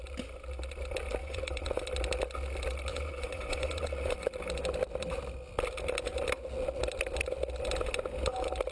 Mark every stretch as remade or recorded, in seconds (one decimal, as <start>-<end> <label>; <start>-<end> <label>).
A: 0.0-1.2 recorded; 1.2-1.8 remade; 1.8-2.9 recorded; 2.9-4.3 remade; 4.3-8.7 recorded